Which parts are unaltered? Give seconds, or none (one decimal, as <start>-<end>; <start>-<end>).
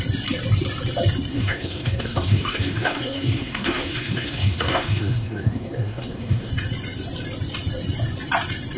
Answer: 0.0-1.3; 6.5-8.8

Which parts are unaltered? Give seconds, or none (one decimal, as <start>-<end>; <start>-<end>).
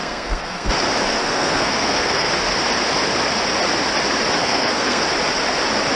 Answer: 0.7-1.2; 2.3-4.4; 5.0-6.0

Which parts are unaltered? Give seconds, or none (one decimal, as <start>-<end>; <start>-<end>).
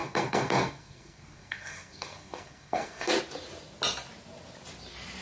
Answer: 3.1-5.2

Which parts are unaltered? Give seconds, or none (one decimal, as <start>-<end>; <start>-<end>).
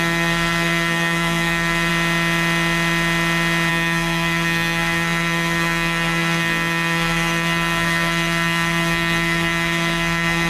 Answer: 1.9-3.7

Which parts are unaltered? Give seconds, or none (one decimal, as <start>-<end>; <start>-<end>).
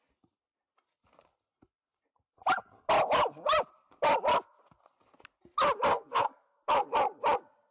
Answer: 0.0-5.9; 6.6-7.7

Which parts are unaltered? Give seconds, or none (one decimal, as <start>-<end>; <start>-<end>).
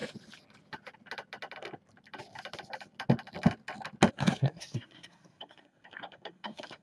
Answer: 0.0-4.1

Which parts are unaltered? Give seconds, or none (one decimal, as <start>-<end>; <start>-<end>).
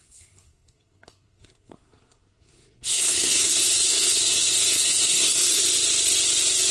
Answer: 5.6-6.7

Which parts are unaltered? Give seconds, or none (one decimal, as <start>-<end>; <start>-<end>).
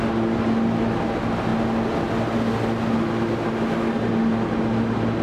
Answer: 0.0-5.2